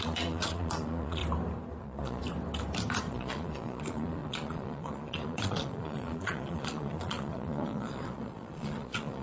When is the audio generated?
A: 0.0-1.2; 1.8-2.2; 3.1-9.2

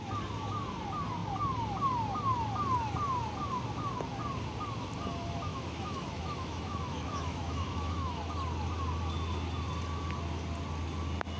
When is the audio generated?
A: 5.5-8.2

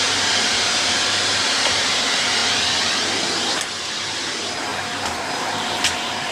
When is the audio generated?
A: 0.0-2.4; 4.0-4.7; 5.4-6.3

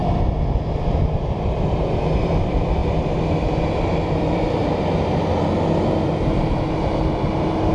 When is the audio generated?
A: 0.7-2.8; 4.1-4.6